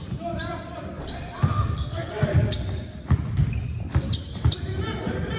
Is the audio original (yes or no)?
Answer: yes